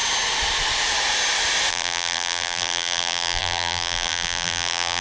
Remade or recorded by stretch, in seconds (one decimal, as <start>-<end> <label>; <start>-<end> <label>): 0.0-1.7 recorded; 1.7-5.0 remade